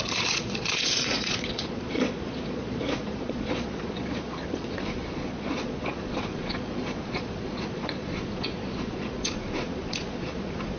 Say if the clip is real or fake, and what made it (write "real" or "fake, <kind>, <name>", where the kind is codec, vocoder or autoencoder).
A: fake, vocoder, Vocos